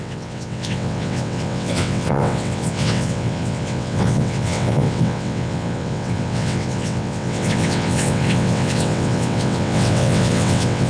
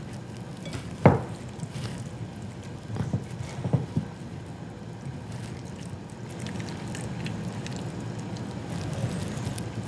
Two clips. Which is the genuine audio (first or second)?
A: second